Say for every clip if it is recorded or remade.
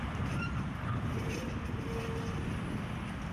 recorded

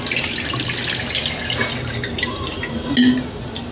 recorded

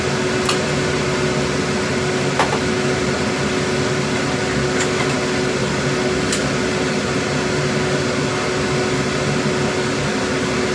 recorded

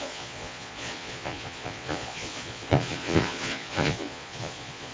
remade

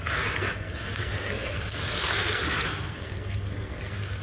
remade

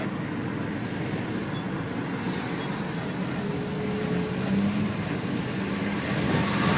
recorded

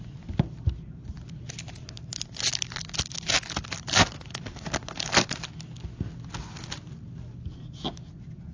recorded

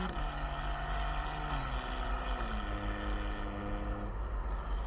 recorded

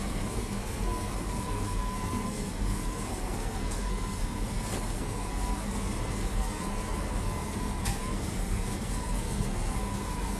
remade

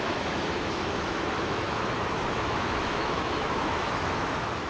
remade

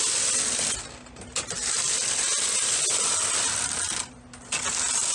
recorded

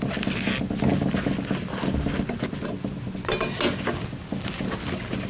recorded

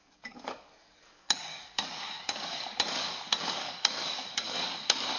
remade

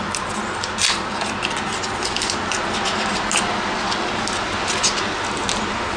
recorded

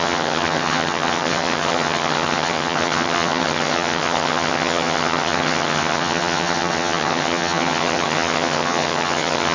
remade